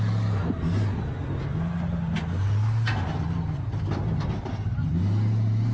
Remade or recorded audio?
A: recorded